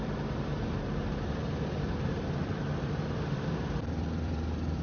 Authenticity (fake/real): fake